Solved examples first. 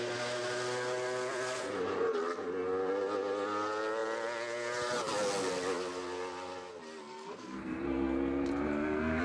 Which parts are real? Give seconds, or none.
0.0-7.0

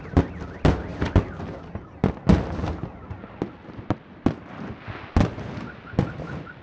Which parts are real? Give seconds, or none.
0.0-6.6

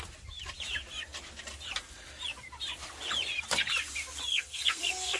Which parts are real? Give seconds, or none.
0.0-4.3

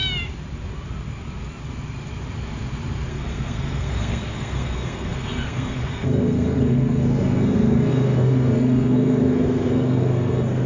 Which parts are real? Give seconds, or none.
0.0-3.1